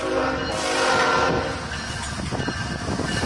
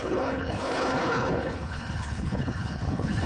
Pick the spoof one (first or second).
second